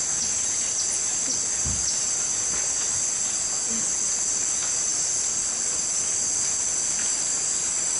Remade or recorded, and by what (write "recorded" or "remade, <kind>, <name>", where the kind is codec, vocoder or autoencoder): recorded